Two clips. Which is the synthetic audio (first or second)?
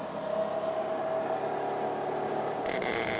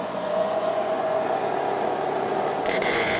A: second